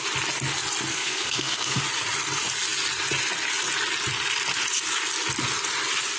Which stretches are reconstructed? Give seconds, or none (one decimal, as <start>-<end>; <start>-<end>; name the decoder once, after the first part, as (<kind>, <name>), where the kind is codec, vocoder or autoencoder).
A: 0.9-1.8 (codec, SNAC)